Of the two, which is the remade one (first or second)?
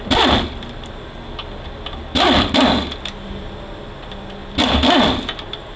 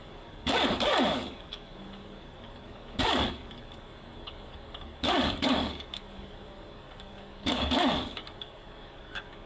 second